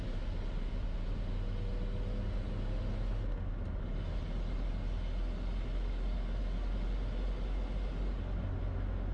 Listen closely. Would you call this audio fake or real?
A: real